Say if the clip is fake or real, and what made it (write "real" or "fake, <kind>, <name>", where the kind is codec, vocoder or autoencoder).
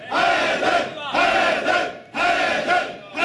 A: real